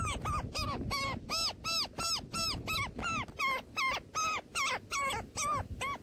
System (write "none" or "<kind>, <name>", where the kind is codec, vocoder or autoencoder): none